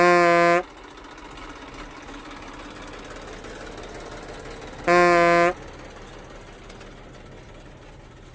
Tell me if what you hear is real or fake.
real